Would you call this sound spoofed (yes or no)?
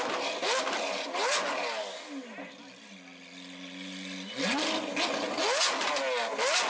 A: no